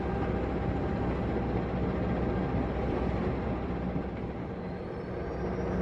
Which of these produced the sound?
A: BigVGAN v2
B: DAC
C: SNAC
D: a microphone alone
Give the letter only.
D